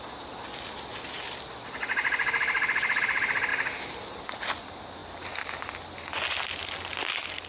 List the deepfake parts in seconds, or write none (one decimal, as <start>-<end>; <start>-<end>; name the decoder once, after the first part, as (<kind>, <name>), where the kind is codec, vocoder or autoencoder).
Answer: none